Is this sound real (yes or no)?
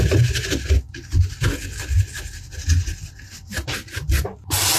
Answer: yes